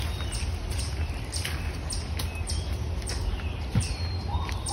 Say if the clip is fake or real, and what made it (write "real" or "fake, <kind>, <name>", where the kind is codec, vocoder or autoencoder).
real